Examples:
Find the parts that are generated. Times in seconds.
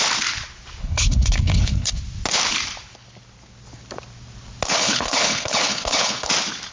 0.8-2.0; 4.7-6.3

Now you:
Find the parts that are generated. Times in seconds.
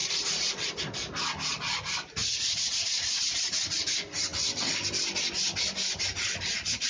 0.0-0.7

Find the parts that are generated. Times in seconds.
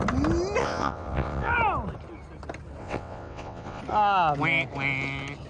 0.6-1.5; 2.8-3.8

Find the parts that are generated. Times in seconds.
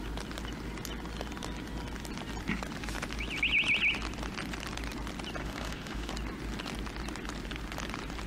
5.4-6.1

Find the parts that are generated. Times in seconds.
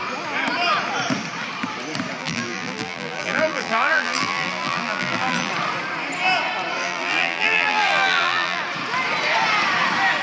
2.2-5.5; 6.8-8.6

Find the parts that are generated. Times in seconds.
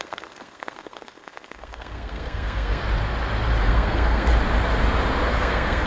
0.0-2.8; 3.6-4.3; 5.3-5.9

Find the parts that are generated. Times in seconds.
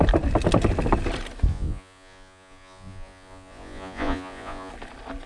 1.5-4.7